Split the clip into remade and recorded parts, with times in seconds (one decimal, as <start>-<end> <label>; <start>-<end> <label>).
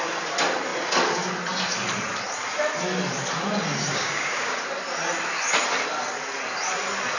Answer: 0.0-3.9 recorded; 3.9-4.6 remade; 4.6-7.2 recorded